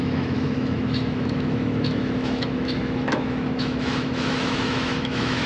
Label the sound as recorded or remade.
remade